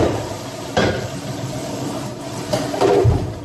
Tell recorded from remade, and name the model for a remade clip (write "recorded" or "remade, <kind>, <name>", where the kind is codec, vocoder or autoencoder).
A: remade, vocoder, BigVGAN v2